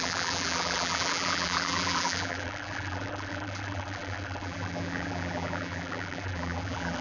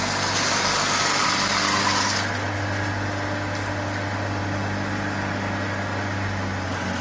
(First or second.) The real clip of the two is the second